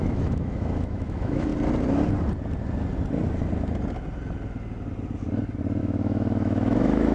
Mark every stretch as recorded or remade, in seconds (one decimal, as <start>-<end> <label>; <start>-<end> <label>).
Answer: 0.0-1.5 remade; 1.5-5.8 recorded; 5.8-7.1 remade